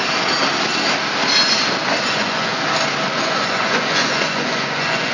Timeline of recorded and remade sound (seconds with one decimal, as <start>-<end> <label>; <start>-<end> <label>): 0.0-2.1 recorded; 2.1-2.5 remade; 2.5-3.2 recorded; 3.2-5.1 remade